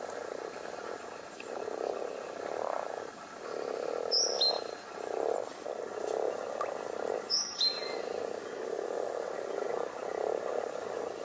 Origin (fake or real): real